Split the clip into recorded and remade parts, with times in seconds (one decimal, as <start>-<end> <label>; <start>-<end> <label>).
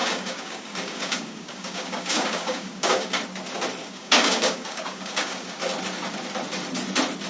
0.0-3.2 remade; 3.2-3.8 recorded; 3.8-5.6 remade; 5.6-7.3 recorded